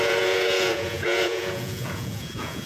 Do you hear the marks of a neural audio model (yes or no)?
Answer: yes